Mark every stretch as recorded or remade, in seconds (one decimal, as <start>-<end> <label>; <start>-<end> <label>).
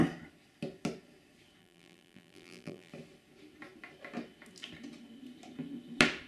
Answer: 0.0-1.6 recorded; 1.6-2.9 remade; 2.9-6.3 recorded